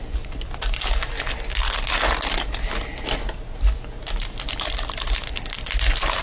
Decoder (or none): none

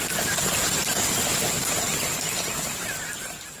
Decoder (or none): none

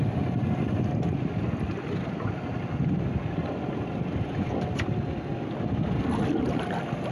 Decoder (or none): none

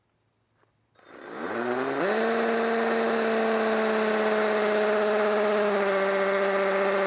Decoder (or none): none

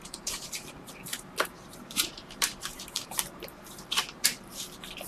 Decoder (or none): vocoder, BigVGAN v2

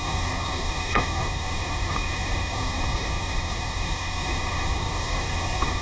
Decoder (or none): codec, DAC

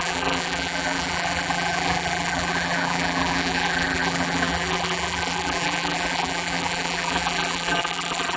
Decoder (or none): vocoder, BigVGAN v2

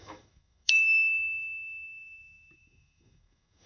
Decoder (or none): autoencoder, DAC-VAE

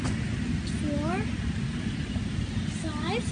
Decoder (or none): none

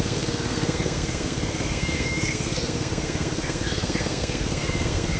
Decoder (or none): codec, SNAC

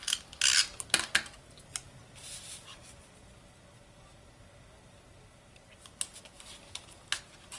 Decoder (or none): none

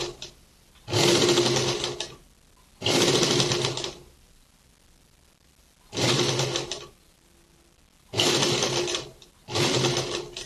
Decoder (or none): none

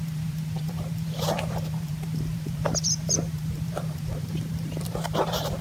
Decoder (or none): vocoder, BigVGAN v2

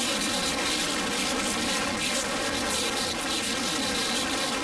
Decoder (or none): none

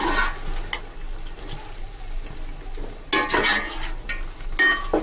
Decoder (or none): none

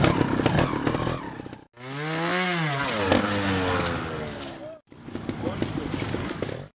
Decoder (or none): none